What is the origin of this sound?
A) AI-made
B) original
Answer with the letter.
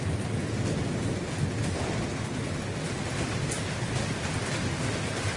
B